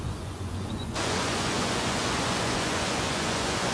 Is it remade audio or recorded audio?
remade